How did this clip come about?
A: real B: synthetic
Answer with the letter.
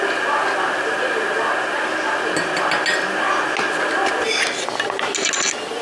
A